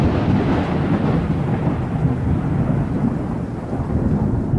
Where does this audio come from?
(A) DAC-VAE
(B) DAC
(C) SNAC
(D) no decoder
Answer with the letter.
D